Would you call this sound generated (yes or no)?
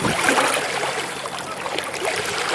no